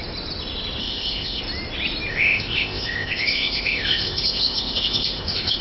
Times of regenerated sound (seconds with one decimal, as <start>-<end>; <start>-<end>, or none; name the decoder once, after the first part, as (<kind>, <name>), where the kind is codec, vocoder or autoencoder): 0.8-1.4 (codec, ZipCodec); 2.1-5.6